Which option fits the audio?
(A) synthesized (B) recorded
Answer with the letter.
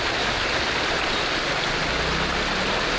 B